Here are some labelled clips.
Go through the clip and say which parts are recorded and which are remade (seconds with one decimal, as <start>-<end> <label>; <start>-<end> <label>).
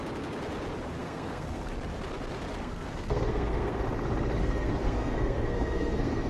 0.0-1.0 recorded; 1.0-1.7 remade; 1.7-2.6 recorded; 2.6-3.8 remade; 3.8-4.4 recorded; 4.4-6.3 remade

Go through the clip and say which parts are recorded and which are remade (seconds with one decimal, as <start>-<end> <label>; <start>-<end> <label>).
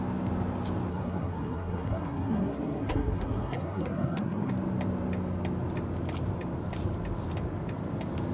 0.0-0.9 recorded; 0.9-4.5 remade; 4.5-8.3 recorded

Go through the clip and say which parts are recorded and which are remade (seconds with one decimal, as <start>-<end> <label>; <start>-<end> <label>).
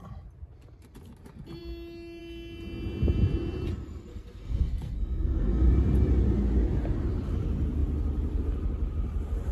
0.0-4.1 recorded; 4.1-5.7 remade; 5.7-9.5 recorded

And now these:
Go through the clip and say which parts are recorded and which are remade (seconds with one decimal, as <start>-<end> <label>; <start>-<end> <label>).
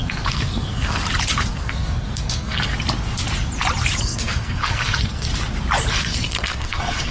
0.0-1.0 remade; 1.0-1.5 recorded; 1.5-2.7 remade; 2.7-4.0 recorded; 4.0-5.3 remade; 5.3-5.9 recorded; 5.9-7.1 remade